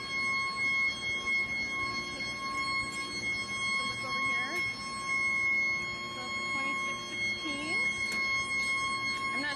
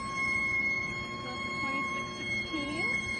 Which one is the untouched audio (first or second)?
first